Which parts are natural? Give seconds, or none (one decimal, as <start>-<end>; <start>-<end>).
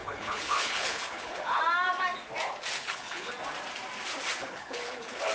1.6-2.8; 3.3-4.4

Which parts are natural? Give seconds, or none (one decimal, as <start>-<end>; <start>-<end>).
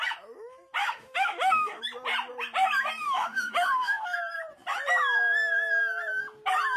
0.0-0.8; 1.8-3.0; 4.2-6.8